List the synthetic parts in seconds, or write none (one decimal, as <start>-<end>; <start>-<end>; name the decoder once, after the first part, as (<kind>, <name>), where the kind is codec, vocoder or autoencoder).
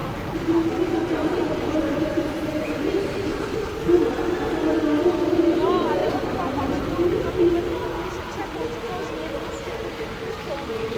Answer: 0.0-3.7 (vocoder, BigVGAN v2)